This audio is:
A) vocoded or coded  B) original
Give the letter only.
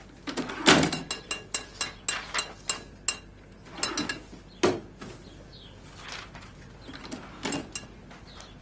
B